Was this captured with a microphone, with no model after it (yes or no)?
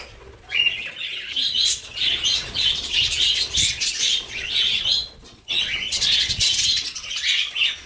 no